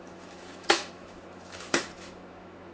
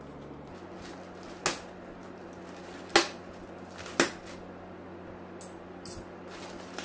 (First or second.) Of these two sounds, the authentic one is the second